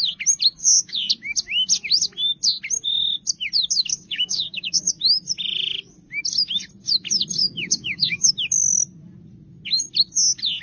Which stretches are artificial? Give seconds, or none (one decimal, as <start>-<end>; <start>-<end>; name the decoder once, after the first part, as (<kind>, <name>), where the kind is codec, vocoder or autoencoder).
0.6-1.1 (codec, DAC); 3.9-4.9; 7.4-8.3